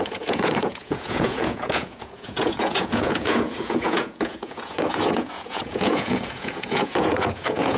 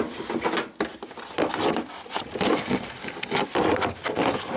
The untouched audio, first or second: second